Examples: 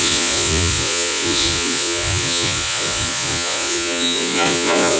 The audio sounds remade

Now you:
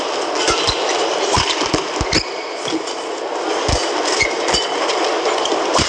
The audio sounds recorded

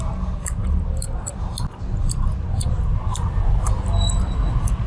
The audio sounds recorded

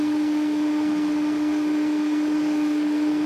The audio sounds remade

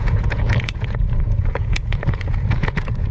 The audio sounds remade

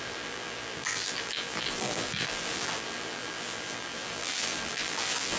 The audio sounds remade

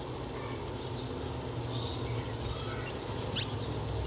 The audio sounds recorded